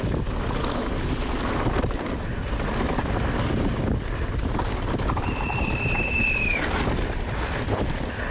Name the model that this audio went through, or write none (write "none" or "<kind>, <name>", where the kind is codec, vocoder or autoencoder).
vocoder, BigVGAN v2